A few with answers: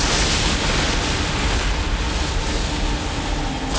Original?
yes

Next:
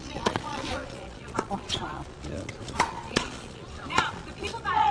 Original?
no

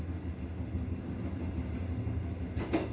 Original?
yes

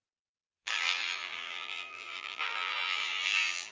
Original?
no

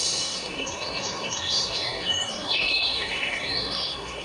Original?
no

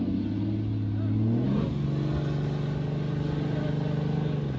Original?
yes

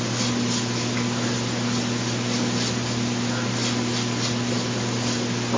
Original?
yes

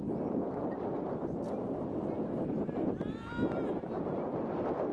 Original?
yes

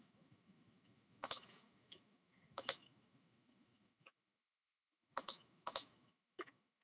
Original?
no